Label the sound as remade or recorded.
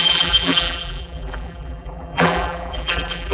remade